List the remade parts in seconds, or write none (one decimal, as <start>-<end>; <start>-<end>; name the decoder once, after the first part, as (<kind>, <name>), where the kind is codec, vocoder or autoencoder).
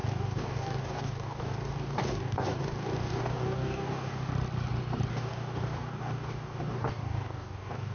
0.0-4.3 (codec, DAC); 5.1-7.9